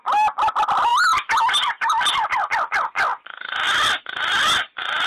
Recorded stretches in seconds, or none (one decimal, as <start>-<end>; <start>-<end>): 0.0-0.9; 4.0-5.1